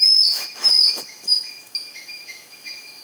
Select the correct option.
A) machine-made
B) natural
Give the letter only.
A